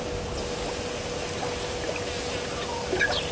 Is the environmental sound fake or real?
real